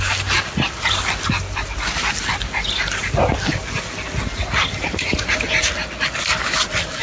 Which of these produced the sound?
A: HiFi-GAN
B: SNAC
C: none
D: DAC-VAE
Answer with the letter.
C